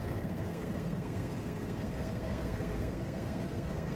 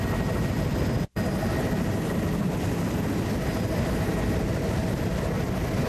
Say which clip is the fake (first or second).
first